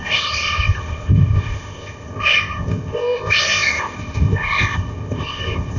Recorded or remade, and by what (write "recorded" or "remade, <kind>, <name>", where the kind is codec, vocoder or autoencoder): remade, codec, ZipCodec